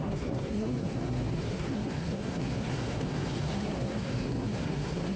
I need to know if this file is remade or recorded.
remade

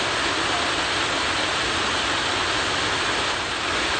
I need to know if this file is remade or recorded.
recorded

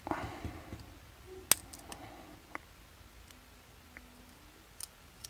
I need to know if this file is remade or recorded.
recorded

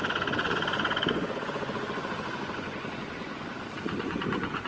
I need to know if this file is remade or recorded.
remade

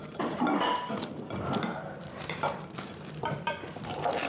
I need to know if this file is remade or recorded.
remade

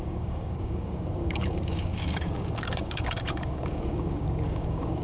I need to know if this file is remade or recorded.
remade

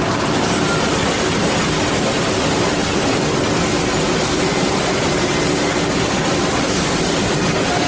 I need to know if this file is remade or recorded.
recorded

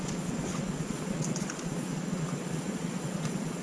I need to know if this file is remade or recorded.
remade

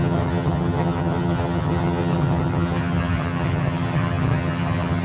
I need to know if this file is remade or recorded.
remade